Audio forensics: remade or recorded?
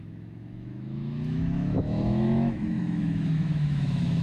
remade